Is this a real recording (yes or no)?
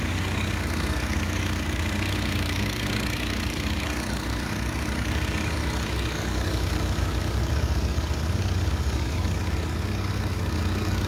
no